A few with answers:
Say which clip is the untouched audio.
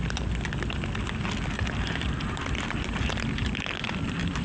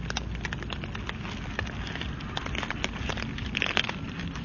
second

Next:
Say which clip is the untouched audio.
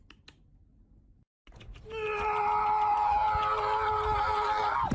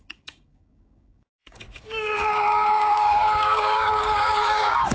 first